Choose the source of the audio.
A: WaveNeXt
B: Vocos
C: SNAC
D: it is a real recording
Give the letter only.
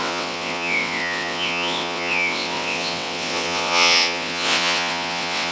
A